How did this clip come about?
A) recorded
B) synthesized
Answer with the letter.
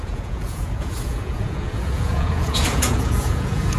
B